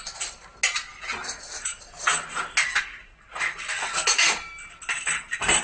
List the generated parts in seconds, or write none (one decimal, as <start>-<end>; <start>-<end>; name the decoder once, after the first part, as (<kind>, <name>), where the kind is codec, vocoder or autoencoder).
none